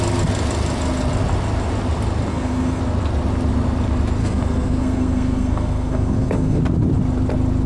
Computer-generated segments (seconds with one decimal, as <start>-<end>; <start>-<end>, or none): 2.3-2.8; 4.2-6.6